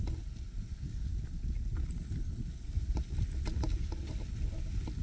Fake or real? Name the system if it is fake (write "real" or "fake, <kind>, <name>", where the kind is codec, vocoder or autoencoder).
real